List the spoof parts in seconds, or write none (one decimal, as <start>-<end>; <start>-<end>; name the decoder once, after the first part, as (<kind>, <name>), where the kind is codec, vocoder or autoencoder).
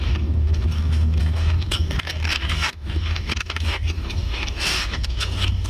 0.0-5.7 (codec, DAC)